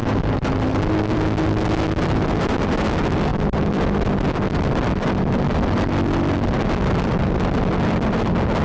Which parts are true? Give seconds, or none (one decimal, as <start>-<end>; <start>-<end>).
2.6-3.3; 8.2-8.6